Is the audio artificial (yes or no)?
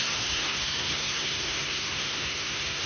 yes